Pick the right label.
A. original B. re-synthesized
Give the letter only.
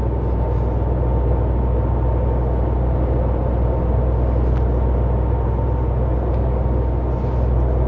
A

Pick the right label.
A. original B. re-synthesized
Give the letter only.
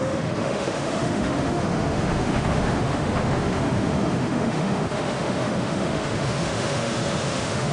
B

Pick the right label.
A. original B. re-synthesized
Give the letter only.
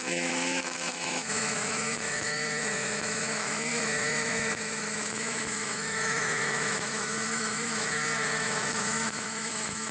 B